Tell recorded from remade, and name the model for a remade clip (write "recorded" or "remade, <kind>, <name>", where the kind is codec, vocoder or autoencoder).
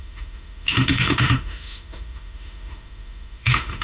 remade, autoencoder, DAC-VAE